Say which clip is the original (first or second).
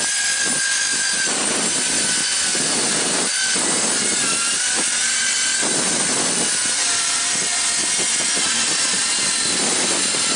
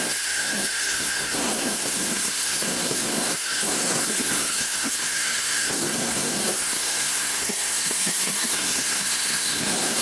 first